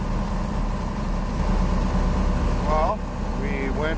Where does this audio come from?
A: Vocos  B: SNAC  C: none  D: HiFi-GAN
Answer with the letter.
C